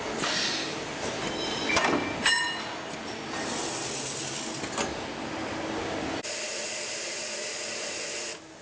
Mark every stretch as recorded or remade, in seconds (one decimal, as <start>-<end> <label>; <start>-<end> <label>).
0.0-8.6 recorded